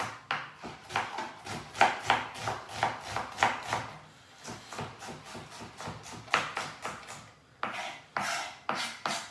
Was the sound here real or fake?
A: real